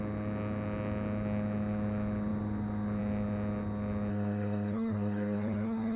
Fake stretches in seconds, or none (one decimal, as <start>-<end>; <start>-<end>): 4.1-6.0

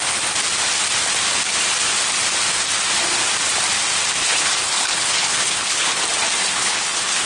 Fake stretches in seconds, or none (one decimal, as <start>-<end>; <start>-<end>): 4.2-6.0; 6.4-7.3